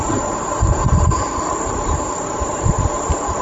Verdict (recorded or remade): remade